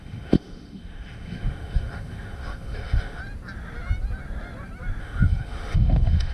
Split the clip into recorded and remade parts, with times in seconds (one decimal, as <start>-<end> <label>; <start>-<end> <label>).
0.0-3.2 remade; 3.2-5.0 recorded; 5.0-6.3 remade